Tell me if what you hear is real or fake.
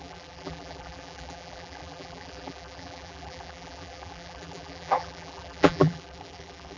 fake